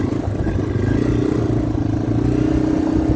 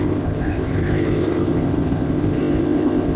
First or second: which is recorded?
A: first